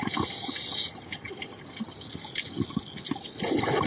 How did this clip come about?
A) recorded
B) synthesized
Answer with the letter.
A